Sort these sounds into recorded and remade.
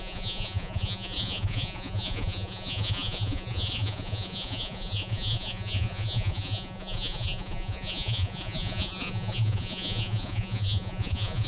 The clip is remade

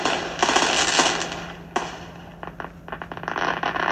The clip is recorded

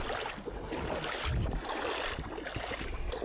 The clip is recorded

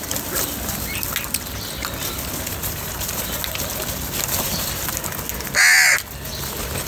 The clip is recorded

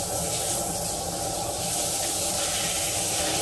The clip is recorded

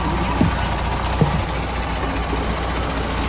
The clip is recorded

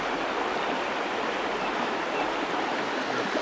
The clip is recorded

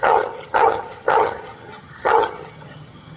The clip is remade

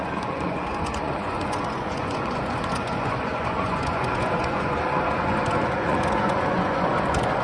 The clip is remade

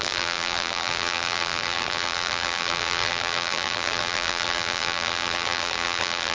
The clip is remade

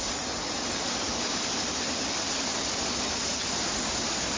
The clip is recorded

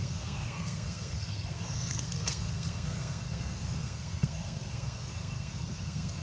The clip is remade